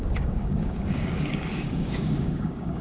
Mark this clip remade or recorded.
remade